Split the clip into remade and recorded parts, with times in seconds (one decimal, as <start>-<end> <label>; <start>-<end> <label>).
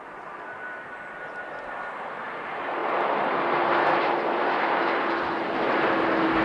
0.0-6.4 recorded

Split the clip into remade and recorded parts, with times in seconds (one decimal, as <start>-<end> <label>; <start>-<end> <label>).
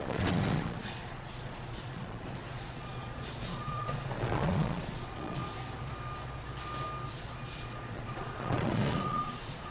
0.0-5.4 remade; 5.4-7.1 recorded; 7.1-9.7 remade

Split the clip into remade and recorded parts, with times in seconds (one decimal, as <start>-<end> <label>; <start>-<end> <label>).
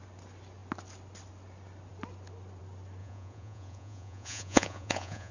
0.0-3.0 recorded; 3.0-5.3 remade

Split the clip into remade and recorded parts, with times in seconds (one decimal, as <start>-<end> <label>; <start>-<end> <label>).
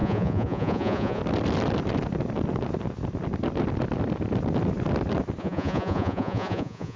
0.0-1.2 remade; 1.2-5.4 recorded; 5.4-7.0 remade